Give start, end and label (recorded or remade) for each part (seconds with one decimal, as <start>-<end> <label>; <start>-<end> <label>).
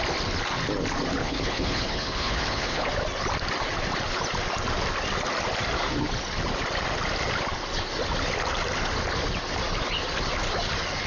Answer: 0.0-1.2 recorded; 1.2-2.9 remade; 2.9-11.1 recorded